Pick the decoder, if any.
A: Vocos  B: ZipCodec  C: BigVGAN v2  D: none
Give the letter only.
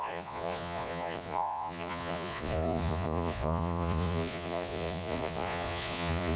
A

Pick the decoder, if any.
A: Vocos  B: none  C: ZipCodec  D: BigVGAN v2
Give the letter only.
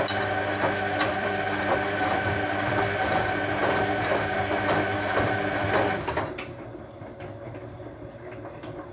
B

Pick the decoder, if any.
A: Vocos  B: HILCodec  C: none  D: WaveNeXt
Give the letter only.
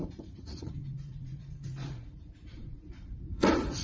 A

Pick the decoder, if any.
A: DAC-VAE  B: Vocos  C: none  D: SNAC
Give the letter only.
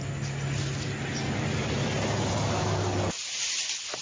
C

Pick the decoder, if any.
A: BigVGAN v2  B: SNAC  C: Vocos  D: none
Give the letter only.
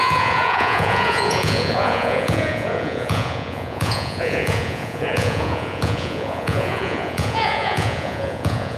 C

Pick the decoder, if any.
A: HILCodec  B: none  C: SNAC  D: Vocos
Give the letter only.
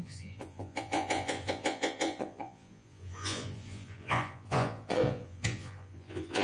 D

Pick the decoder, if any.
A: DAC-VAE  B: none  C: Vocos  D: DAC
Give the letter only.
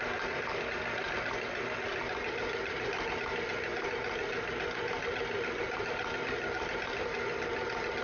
B